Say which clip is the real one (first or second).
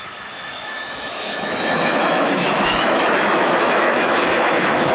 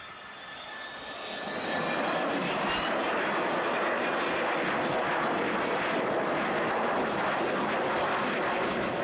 second